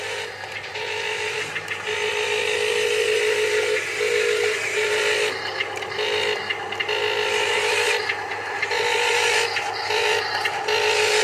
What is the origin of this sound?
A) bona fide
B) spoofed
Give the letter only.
A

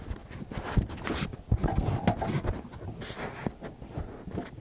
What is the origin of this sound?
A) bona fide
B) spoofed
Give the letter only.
A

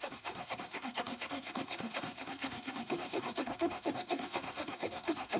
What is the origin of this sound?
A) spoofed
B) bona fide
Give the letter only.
A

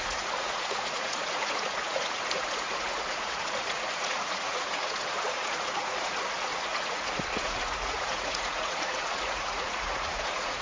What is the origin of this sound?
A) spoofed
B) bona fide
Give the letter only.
A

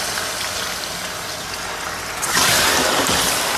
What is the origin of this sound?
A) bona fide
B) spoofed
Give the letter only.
A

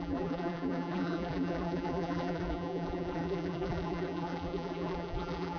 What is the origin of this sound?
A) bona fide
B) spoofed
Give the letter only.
B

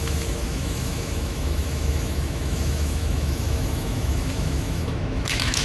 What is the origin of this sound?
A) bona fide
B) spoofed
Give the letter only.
B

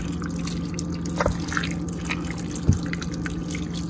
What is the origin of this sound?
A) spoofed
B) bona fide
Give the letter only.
B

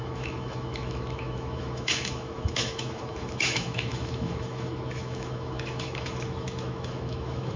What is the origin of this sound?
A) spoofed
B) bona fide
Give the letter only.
A